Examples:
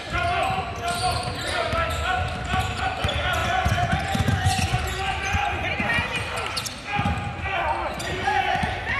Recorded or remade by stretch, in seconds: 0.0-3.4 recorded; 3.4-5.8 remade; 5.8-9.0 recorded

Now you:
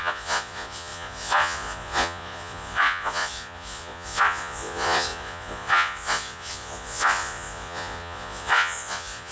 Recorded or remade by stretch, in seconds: 0.0-9.3 remade

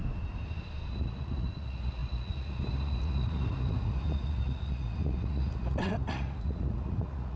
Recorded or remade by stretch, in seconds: 0.0-0.9 recorded; 0.9-7.4 remade

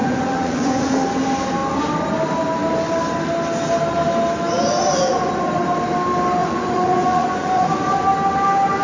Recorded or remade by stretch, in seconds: 0.0-0.9 remade; 0.9-6.4 recorded; 6.4-7.7 remade; 7.7-8.8 recorded

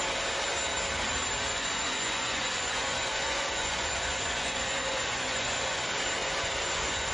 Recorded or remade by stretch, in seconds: 0.0-1.5 recorded; 1.5-5.8 remade; 5.8-6.2 recorded; 6.2-7.1 remade

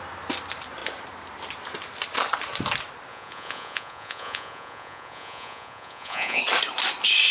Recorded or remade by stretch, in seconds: 0.0-3.1 recorded; 3.1-6.4 remade; 6.4-7.3 recorded

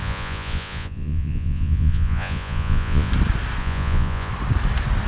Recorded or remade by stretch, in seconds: 0.0-3.1 remade; 3.1-3.6 recorded; 3.6-4.3 remade; 4.3-5.1 recorded